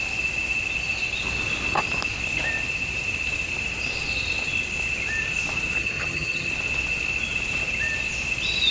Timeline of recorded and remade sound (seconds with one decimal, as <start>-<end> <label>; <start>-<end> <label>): 0.0-5.8 recorded; 5.8-6.5 remade; 6.5-8.7 recorded